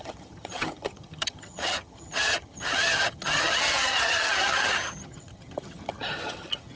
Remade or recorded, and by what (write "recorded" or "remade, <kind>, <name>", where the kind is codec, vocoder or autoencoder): remade, vocoder, HiFi-GAN